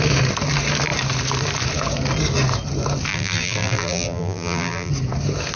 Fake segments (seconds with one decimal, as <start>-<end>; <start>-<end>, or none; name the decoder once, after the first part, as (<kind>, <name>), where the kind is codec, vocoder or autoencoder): 3.1-4.9 (vocoder, BigVGAN v2)